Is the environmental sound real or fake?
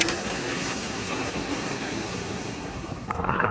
fake